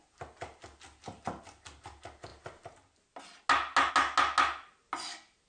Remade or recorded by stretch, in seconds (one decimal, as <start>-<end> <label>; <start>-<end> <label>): 0.0-5.5 recorded